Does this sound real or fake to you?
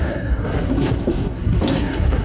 fake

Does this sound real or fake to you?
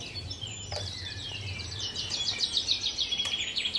fake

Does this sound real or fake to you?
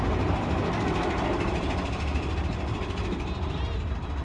real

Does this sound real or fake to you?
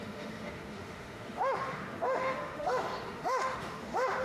fake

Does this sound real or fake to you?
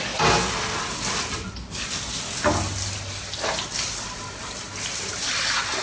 real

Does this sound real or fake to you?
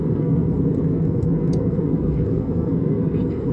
fake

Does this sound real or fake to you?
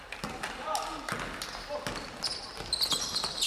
real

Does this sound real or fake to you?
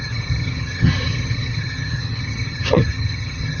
fake